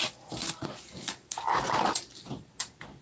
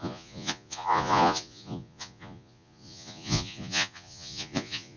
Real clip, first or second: first